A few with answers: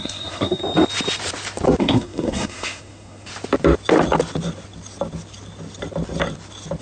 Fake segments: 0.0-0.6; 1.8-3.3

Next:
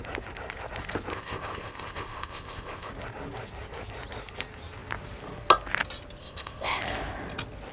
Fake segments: 1.1-2.9; 6.2-6.8

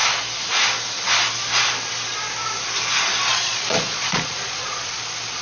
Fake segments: 3.3-4.9

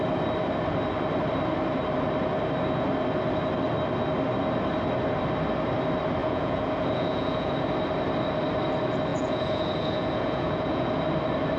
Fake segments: 6.2-7.5; 9.1-11.0